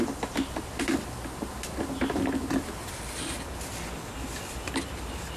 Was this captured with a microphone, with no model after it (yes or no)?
yes